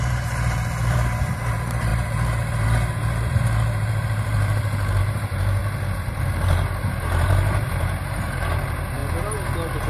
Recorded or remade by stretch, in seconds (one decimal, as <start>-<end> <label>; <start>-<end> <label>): 0.0-5.6 remade; 5.6-6.4 recorded; 6.4-9.0 remade; 9.0-9.9 recorded